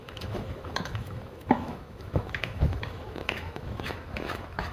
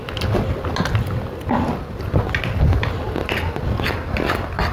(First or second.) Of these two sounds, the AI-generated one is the first